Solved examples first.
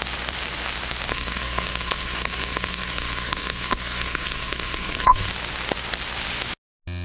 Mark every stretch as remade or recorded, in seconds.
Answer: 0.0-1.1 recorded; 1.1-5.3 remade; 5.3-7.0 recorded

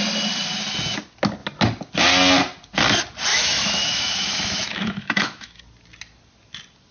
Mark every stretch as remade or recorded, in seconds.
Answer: 0.0-3.3 recorded; 3.3-5.6 remade; 5.6-6.9 recorded

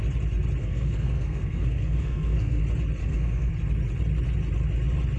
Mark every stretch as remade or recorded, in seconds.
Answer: 0.0-0.6 recorded; 0.6-2.6 remade; 2.6-3.0 recorded; 3.0-3.5 remade; 3.5-5.2 recorded

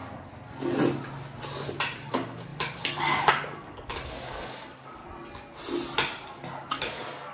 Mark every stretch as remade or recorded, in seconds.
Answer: 0.0-2.1 recorded; 2.1-5.0 remade; 5.0-6.8 recorded; 6.8-7.3 remade

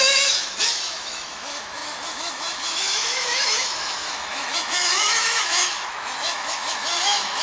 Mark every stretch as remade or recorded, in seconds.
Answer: 0.0-7.4 remade

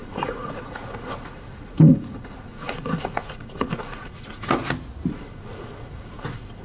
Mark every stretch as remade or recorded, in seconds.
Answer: 0.0-4.6 remade; 4.6-5.1 recorded; 5.1-6.6 remade